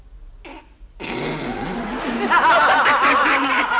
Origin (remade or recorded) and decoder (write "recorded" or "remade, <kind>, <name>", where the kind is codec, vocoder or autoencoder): recorded